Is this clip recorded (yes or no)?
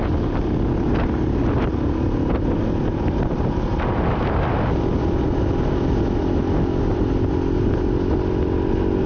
yes